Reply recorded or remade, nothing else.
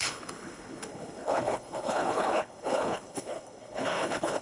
remade